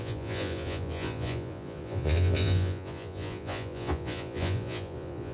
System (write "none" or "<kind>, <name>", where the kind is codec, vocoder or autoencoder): vocoder, Vocos